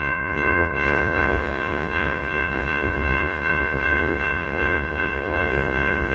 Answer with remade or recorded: remade